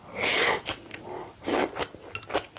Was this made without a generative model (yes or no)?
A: yes